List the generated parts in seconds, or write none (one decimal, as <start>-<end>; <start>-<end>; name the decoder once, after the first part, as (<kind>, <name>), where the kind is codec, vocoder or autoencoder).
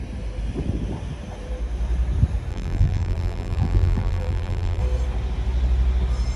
2.5-4.8 (vocoder, BigVGAN v2)